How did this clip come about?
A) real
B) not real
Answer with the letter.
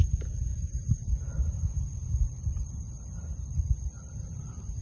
A